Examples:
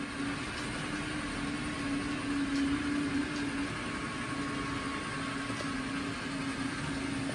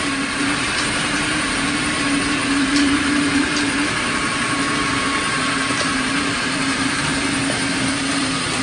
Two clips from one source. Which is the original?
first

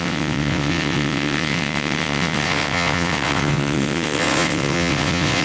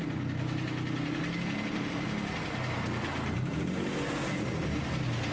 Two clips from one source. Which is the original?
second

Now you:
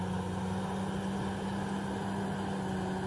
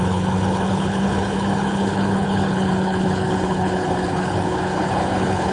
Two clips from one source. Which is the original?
first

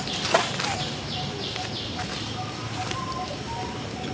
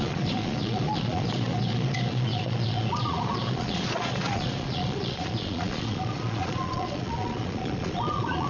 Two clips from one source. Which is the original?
first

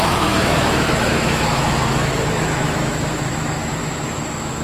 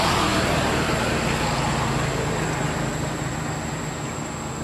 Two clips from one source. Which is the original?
second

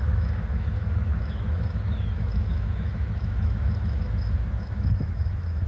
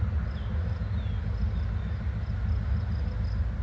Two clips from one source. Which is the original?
second